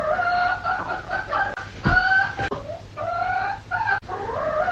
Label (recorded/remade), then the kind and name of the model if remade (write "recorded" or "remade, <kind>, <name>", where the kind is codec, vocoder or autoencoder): recorded